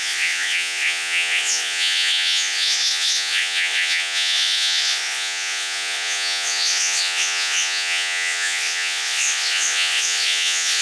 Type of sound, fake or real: fake